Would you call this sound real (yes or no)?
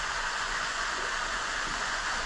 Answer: no